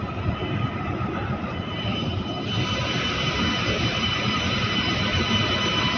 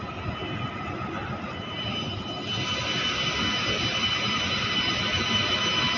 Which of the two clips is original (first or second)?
second